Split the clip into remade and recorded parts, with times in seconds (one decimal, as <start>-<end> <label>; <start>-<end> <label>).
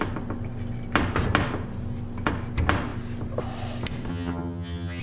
0.0-4.1 recorded; 4.1-5.0 remade